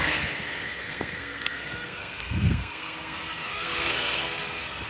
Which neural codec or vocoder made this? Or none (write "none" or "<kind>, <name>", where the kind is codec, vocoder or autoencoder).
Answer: codec, SNAC